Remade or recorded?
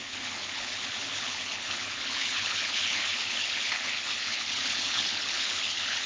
remade